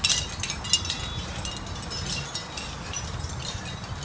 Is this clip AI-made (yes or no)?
no